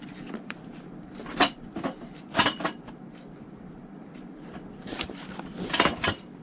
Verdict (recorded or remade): remade